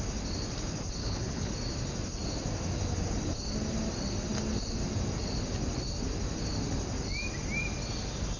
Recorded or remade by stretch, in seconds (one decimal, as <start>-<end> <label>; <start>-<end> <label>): 0.0-1.0 recorded; 1.0-1.5 remade; 1.5-8.4 recorded